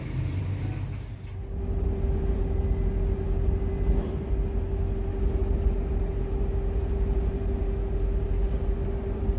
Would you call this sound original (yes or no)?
yes